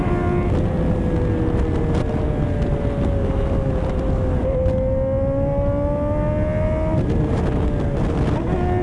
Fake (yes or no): no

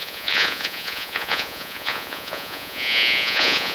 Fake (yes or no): yes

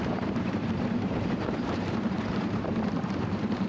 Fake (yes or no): yes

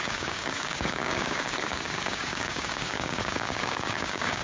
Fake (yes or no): yes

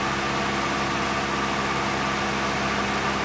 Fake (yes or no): no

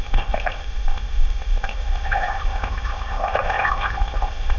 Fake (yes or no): yes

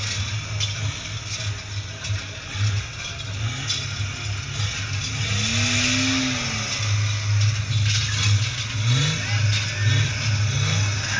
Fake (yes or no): no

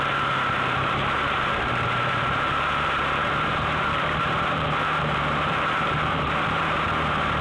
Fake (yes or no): yes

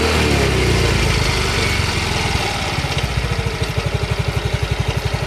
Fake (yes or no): no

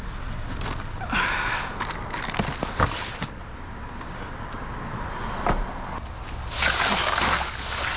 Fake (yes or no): no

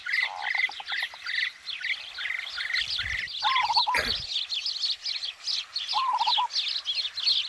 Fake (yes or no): no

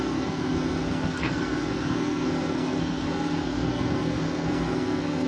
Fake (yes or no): yes